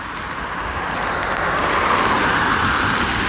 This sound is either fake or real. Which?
real